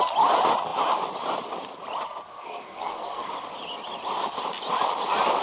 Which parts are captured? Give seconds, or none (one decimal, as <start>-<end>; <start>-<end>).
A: 0.0-2.3; 3.3-5.4